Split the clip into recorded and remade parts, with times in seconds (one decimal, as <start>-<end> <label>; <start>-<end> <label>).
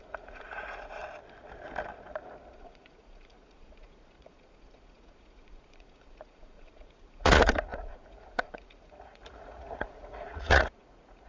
0.0-1.0 remade; 1.0-2.5 recorded; 2.5-11.3 remade